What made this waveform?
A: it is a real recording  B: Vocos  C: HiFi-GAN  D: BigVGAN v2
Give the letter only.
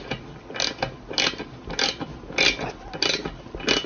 A